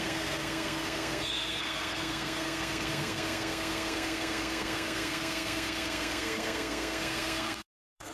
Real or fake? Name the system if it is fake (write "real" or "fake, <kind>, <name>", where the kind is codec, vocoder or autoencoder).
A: fake, codec, SNAC